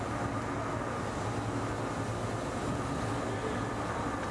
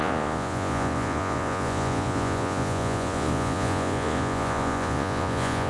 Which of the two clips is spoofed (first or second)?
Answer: second